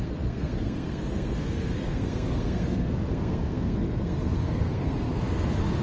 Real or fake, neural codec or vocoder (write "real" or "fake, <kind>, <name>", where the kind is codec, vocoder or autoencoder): fake, codec, SNAC